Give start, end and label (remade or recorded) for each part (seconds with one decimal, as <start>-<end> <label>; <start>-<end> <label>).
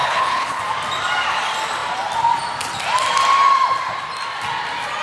0.0-0.6 remade; 0.6-5.0 recorded